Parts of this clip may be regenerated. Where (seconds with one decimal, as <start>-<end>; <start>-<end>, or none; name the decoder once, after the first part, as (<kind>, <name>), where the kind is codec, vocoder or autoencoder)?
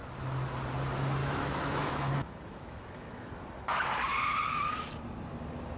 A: 1.2-3.3 (autoencoder, DAC-VAE)